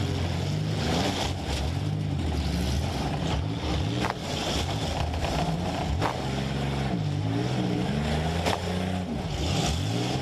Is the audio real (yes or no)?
yes